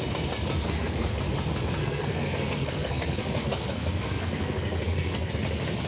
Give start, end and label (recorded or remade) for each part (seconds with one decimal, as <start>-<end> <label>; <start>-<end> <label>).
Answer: 0.0-0.6 recorded; 0.6-1.2 remade; 1.2-1.8 recorded; 1.8-5.3 remade; 5.3-5.9 recorded